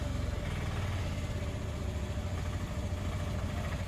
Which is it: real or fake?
real